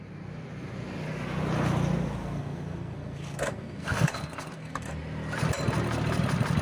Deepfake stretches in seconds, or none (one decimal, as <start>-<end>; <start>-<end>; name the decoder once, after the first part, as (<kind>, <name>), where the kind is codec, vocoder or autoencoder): 2.2-4.9 (codec, SNAC)